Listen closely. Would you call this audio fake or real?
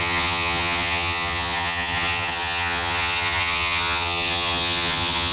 fake